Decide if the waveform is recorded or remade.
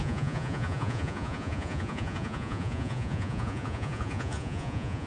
remade